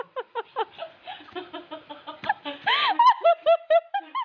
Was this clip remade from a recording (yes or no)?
no